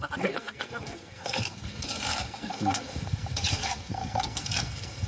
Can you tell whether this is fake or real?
fake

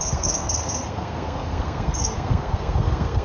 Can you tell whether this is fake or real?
fake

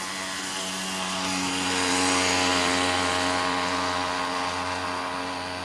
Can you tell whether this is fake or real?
real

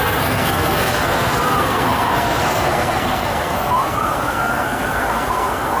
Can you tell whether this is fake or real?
fake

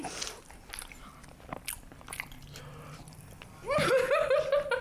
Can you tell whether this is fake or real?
real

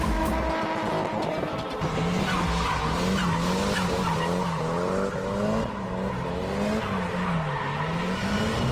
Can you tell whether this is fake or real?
real